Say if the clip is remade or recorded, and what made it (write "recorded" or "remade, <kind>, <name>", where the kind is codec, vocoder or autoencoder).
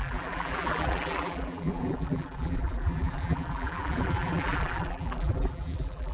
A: remade, vocoder, BigVGAN v2